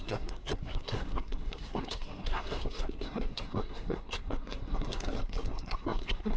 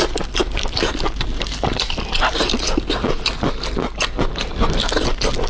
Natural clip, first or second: second